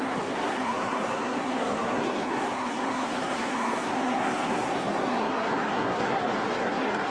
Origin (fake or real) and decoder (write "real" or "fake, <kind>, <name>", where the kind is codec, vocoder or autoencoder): fake, codec, SNAC